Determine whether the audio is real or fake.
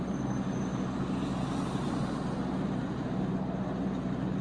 real